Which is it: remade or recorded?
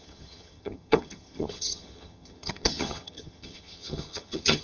remade